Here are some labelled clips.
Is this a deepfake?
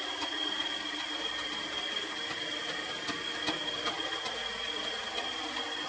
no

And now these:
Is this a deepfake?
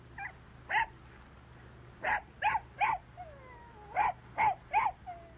no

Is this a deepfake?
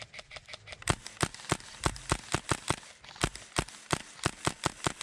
no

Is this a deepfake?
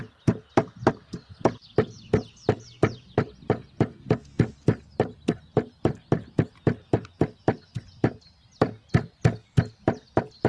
no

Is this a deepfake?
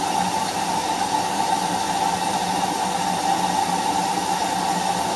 no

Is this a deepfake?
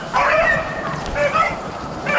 yes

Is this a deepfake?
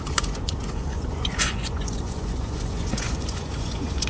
yes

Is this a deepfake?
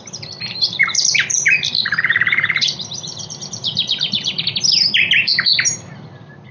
yes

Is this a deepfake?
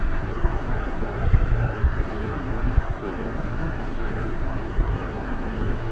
yes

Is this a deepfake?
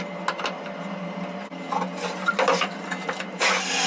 no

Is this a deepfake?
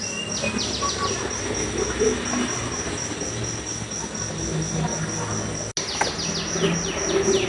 no